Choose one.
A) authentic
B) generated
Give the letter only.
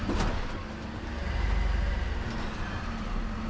A